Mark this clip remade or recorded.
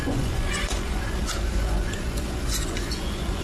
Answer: remade